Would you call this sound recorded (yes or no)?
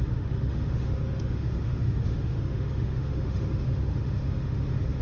no